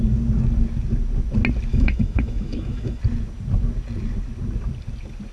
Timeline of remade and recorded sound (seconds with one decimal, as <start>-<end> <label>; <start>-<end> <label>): 0.0-1.7 recorded; 1.7-3.0 remade; 3.0-5.3 recorded